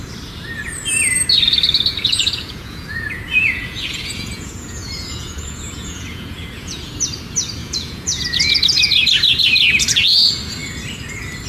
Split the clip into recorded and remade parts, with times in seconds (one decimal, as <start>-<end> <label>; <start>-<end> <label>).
0.0-1.9 recorded; 1.9-6.9 remade; 6.9-7.6 recorded; 7.6-8.6 remade; 8.6-11.5 recorded